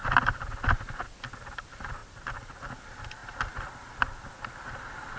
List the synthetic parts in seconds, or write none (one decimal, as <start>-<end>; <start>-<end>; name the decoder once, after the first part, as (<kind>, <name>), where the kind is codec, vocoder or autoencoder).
2.0-2.6 (vocoder, BigVGAN v2); 3.2-5.2